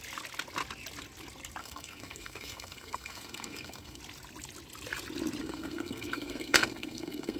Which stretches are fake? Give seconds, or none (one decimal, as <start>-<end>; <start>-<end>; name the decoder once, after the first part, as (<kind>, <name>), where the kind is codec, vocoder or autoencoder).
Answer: 1.6-4.0 (codec, SNAC); 5.4-7.4